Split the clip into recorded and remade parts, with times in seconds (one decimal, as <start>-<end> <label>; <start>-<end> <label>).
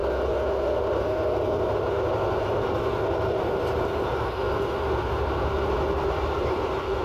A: 0.0-7.0 recorded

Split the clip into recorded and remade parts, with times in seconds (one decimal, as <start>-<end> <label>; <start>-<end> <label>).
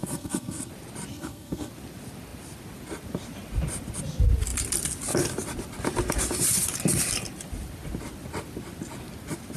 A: 0.0-0.7 remade; 0.7-1.1 recorded; 1.1-1.7 remade; 1.7-9.6 recorded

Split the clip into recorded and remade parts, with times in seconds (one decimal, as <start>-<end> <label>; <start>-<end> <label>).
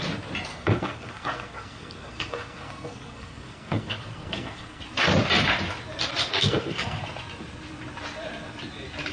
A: 0.0-0.5 recorded; 0.5-4.8 remade; 4.8-6.3 recorded; 6.3-7.0 remade; 7.0-9.1 recorded